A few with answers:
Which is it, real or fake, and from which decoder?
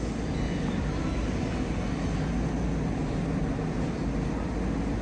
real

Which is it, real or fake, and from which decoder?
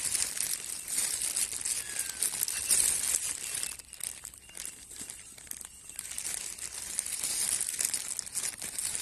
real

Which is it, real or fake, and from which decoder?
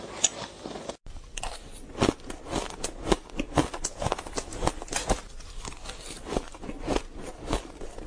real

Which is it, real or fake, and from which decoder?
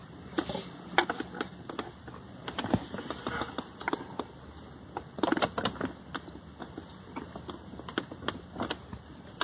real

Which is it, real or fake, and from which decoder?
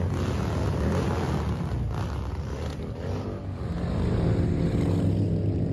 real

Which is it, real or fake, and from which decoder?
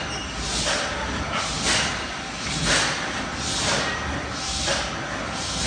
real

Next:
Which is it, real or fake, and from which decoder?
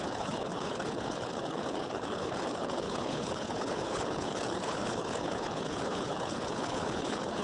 fake, codec, HILCodec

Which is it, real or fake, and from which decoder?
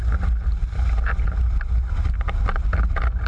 real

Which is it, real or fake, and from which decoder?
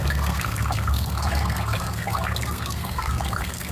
fake, codec, SNAC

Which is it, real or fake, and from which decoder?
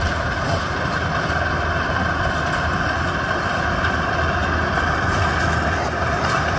fake, vocoder, BigVGAN v2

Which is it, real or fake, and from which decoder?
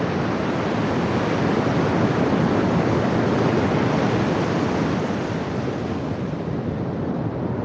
real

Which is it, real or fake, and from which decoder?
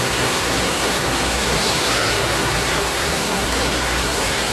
fake, codec, SNAC